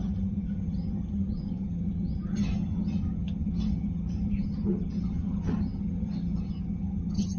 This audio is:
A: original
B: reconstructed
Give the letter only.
B